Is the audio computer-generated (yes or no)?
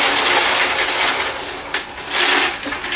no